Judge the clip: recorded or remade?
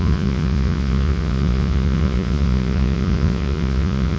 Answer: remade